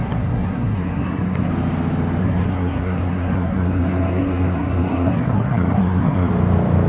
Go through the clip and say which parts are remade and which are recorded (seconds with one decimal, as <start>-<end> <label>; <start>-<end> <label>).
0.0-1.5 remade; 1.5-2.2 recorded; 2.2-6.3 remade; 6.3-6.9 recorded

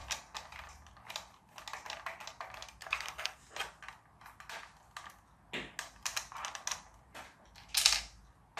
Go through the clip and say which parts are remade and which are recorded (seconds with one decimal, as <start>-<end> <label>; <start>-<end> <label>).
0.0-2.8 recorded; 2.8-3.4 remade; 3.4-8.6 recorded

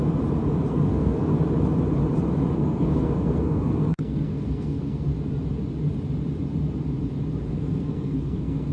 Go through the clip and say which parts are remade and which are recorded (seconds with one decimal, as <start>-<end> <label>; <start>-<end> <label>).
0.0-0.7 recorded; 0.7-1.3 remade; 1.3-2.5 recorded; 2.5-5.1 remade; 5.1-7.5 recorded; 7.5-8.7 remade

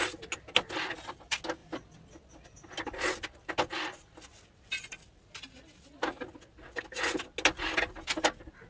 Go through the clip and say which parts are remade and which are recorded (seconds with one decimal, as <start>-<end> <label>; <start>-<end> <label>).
0.0-8.7 recorded

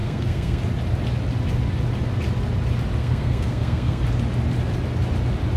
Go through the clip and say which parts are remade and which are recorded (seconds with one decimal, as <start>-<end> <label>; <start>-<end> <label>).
0.0-0.6 remade; 0.6-3.0 recorded; 3.0-4.0 remade; 4.0-5.6 recorded

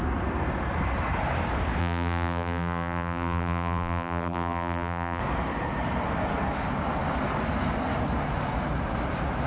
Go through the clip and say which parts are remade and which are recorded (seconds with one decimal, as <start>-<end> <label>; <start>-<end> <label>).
0.0-1.8 recorded; 1.8-5.2 remade; 5.2-9.5 recorded

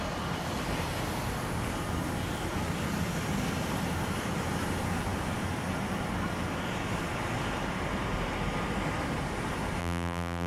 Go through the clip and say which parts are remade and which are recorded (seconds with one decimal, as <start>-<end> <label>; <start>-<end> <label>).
0.0-9.8 recorded; 9.8-10.5 remade

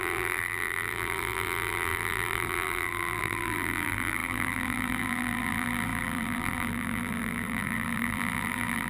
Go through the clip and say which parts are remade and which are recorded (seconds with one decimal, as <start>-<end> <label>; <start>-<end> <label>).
0.0-8.9 remade